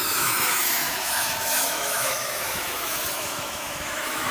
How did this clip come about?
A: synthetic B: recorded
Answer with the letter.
A